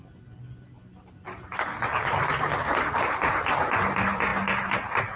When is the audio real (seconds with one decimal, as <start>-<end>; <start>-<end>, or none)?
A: 0.0-5.2